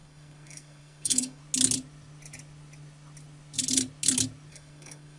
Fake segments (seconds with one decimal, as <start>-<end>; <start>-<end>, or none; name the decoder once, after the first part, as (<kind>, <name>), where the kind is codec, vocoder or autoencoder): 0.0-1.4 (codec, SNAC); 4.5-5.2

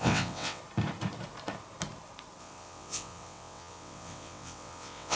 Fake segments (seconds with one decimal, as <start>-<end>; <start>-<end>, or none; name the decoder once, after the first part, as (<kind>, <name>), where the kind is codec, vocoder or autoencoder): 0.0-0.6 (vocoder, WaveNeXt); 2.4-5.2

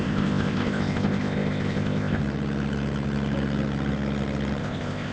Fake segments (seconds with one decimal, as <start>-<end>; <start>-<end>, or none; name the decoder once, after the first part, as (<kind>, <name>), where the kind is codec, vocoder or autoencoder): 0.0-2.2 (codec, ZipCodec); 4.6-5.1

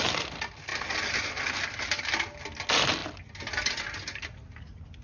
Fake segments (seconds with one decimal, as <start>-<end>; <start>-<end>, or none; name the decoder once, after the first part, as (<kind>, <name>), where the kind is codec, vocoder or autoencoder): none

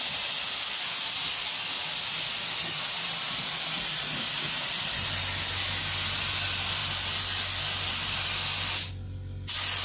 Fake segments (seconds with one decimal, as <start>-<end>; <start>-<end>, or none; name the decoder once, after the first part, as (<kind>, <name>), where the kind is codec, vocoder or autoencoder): none